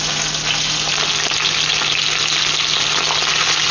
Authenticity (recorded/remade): recorded